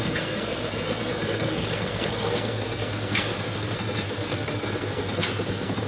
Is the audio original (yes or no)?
no